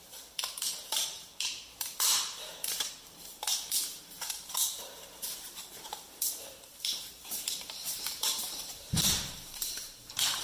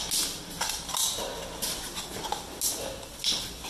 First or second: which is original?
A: second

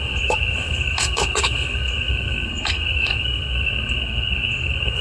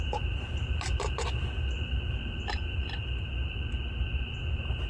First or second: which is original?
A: second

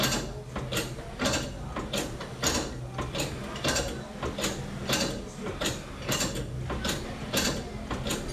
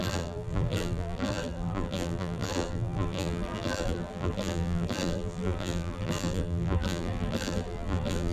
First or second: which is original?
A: first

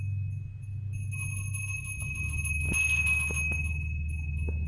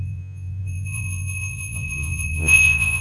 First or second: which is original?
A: first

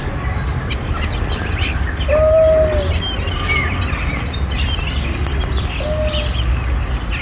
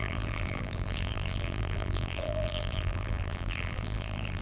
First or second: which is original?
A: first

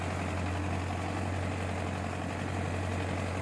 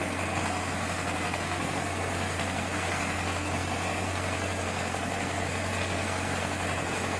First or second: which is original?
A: first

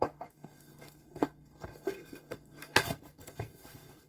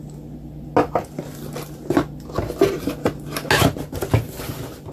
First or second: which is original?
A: second